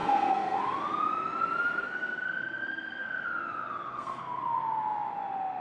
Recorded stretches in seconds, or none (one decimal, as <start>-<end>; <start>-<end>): 0.6-1.8; 3.3-3.9; 4.4-5.6

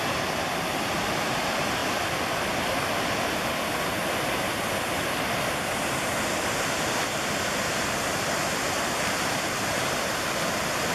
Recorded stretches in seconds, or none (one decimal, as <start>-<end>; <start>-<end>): 0.0-10.9

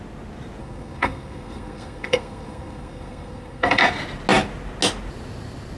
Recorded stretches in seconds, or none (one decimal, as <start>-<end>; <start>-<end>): 0.0-0.6; 3.8-5.8

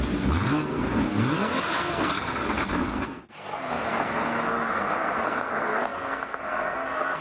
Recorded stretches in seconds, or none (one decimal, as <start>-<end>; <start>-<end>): none

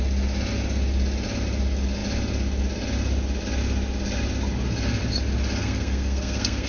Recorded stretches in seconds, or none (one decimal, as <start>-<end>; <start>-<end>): 0.0-5.6

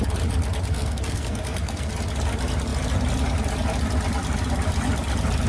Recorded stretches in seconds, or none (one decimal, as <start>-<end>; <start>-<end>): 0.0-0.7; 1.9-5.5